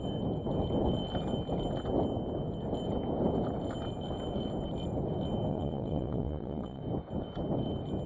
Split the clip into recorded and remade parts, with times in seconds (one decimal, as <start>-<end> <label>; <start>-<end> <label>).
0.0-5.5 recorded; 5.5-6.8 remade; 6.8-8.1 recorded